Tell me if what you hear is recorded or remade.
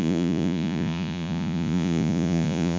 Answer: remade